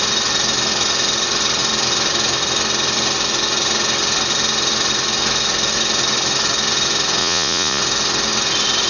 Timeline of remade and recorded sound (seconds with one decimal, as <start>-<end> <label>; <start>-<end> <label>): 0.0-7.2 recorded; 7.2-7.8 remade; 7.8-8.9 recorded